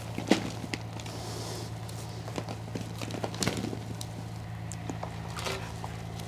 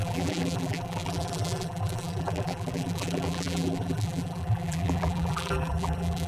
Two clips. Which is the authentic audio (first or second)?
first